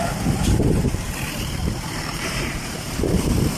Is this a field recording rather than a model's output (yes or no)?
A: no